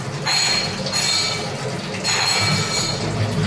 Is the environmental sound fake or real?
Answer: real